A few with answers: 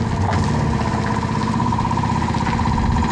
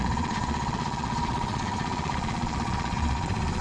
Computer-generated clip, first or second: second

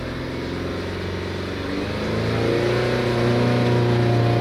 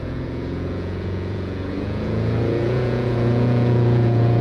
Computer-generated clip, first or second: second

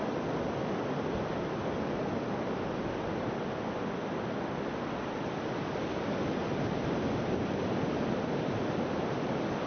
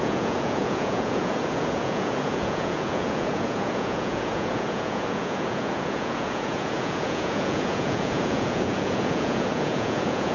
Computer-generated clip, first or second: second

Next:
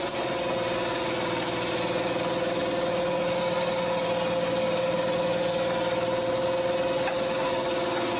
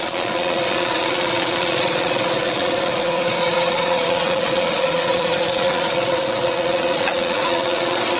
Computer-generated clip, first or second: second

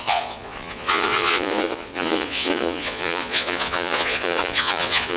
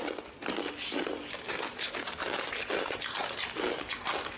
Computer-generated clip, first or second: first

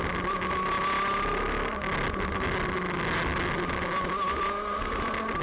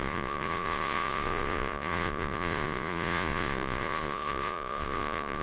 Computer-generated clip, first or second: second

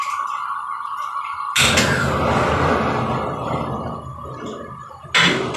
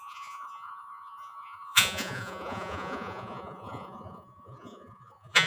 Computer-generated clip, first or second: second